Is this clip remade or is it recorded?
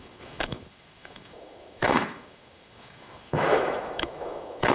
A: remade